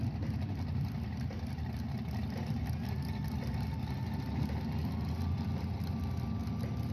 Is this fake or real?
real